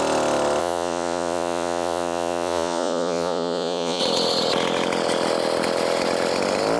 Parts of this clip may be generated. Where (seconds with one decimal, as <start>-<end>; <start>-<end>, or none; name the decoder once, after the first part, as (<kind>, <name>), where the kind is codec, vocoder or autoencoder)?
0.6-4.0 (vocoder, Vocos)